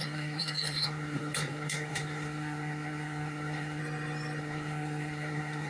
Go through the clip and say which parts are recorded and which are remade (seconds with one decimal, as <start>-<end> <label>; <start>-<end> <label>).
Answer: 0.0-3.8 remade; 3.8-4.4 recorded; 4.4-5.7 remade